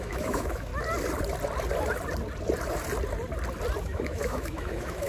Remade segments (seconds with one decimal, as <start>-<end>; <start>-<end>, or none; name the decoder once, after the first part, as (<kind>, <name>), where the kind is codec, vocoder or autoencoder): 0.0-0.7 (autoencoder, DAC-VAE); 3.8-5.1